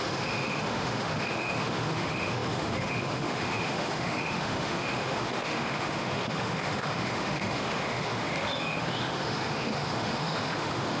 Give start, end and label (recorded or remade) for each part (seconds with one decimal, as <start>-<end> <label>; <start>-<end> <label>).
0.0-11.0 remade

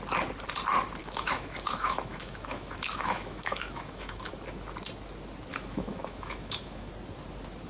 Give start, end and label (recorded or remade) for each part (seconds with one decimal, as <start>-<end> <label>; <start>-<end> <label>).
0.0-1.0 recorded; 1.0-4.3 remade; 4.3-5.5 recorded; 5.5-6.9 remade; 6.9-7.7 recorded

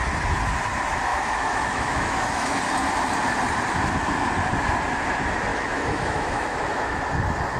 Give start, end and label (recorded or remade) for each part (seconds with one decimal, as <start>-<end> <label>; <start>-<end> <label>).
0.0-1.1 recorded; 1.1-2.6 remade; 2.6-5.5 recorded; 5.5-7.0 remade; 7.0-7.6 recorded

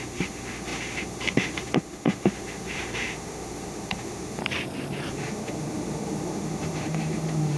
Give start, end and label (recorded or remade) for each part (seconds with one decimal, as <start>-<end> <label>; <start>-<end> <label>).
0.0-4.4 remade; 4.4-5.1 recorded; 5.1-7.6 remade

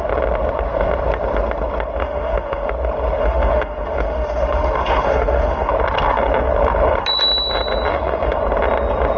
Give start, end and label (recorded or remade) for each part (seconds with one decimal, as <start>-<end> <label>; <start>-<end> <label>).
0.0-2.0 recorded; 2.0-2.7 remade; 2.7-3.2 recorded; 3.2-5.7 remade; 5.7-7.9 recorded; 7.9-8.4 remade; 8.4-9.2 recorded

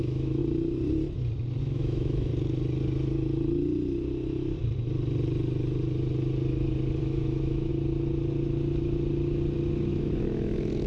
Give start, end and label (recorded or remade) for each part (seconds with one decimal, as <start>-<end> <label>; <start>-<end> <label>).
0.0-0.4 remade; 0.4-1.6 recorded; 1.6-2.3 remade; 2.3-7.0 recorded; 7.0-7.7 remade; 7.7-9.9 recorded; 9.9-10.9 remade

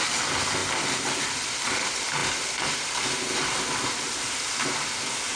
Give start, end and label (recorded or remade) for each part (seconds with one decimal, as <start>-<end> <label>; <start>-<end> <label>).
0.0-5.4 recorded